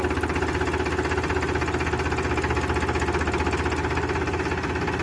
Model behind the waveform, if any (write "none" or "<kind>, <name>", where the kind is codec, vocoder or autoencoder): none